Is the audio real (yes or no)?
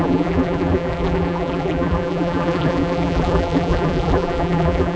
no